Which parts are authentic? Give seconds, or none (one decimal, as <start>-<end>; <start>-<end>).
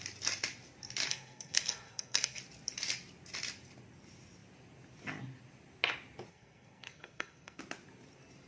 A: 0.0-1.1; 2.4-6.3; 7.6-8.5